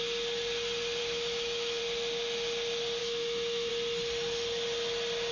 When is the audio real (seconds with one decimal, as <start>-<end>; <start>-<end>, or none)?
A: 0.0-1.0; 1.8-3.0; 3.7-5.3